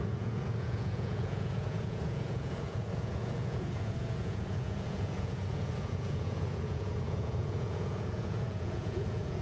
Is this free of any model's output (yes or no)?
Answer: no